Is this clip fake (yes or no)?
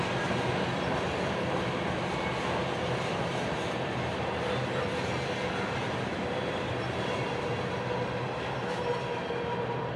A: no